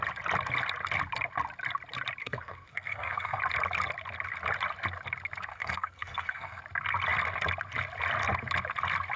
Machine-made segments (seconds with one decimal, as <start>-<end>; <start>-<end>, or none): 2.2-3.4; 5.5-6.6

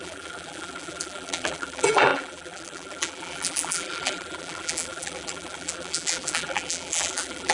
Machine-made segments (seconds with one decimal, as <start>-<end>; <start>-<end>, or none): 0.0-7.5

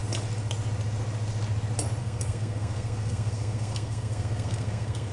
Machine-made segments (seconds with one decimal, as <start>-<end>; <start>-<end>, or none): 2.0-5.1

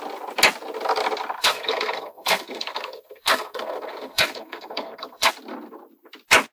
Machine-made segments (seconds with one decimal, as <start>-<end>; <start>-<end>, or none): 1.4-5.3

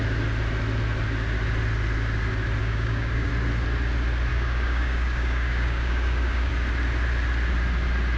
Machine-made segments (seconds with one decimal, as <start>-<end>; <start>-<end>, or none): 2.6-3.3; 4.3-6.5

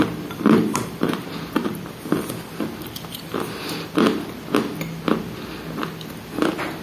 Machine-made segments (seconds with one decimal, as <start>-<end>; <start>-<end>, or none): 0.0-3.2